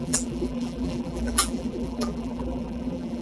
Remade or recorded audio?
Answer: remade